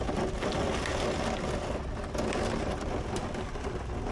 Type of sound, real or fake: real